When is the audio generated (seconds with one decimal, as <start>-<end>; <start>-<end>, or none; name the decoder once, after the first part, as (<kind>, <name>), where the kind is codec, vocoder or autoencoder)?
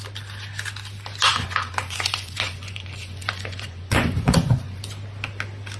1.3-4.8 (vocoder, Vocos)